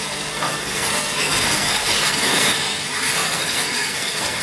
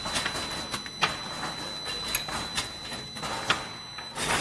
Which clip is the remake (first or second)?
first